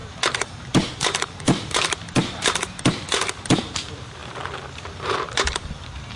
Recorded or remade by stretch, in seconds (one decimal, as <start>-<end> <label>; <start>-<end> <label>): 0.0-4.2 remade; 4.2-4.9 recorded; 4.9-6.2 remade